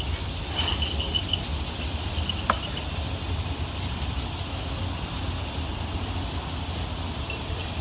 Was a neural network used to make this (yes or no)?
no